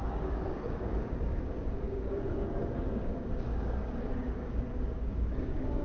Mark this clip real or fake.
fake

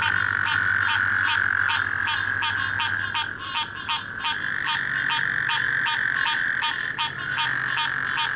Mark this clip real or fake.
real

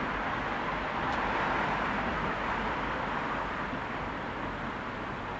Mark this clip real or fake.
real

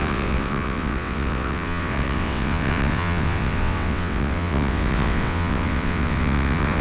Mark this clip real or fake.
fake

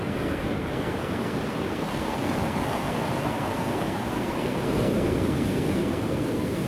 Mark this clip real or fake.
fake